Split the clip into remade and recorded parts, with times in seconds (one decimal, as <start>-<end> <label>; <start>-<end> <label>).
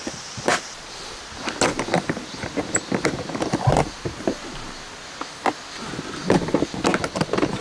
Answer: 0.0-7.6 recorded